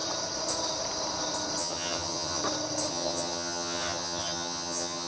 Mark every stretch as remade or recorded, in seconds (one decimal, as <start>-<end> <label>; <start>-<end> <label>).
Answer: 0.0-1.6 recorded; 1.6-2.4 remade; 2.4-2.9 recorded; 2.9-5.1 remade